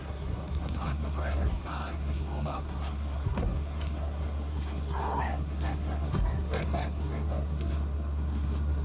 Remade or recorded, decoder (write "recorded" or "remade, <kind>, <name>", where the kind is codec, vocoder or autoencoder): remade, codec, SNAC